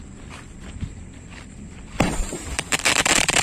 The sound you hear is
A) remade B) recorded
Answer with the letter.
A